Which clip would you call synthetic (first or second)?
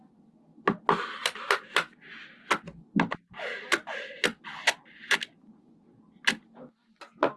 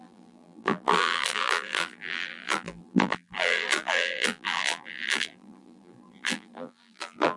second